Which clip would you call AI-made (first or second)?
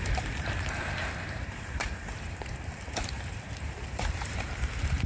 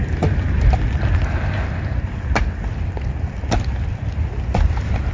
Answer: first